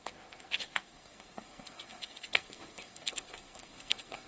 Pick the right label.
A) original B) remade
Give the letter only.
B